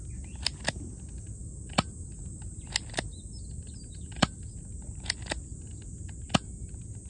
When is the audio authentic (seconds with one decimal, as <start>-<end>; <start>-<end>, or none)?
0.0-7.1